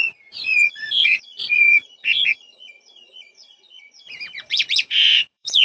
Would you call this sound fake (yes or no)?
yes